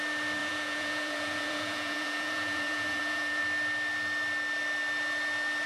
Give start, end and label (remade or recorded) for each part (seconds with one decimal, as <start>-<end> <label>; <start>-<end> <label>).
0.0-0.4 recorded; 0.4-3.4 remade; 3.4-5.7 recorded